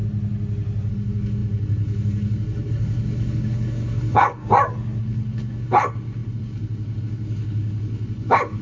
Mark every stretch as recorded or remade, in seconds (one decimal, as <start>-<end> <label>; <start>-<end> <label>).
0.0-0.9 recorded; 0.9-4.4 remade; 4.4-5.0 recorded; 5.0-8.6 remade